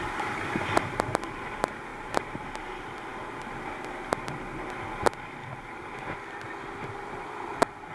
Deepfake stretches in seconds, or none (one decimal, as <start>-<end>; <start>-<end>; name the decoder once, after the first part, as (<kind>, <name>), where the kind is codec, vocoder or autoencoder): 1.9-2.4 (vocoder, BigVGAN v2); 7.0-7.5